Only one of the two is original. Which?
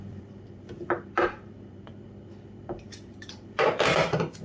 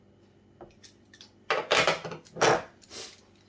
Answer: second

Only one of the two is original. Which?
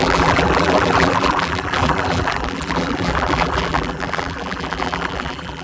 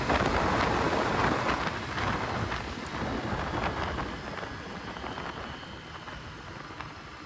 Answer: second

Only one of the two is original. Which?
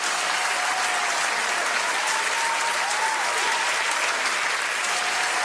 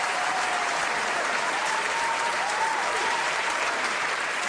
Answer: first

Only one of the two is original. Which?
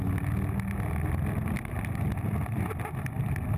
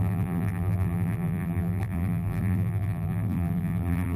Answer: first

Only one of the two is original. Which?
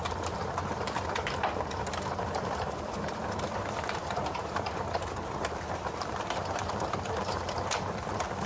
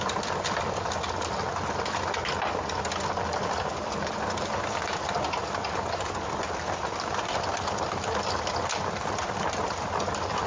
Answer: second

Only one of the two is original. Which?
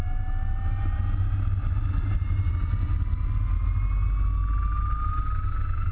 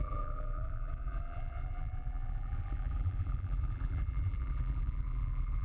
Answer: first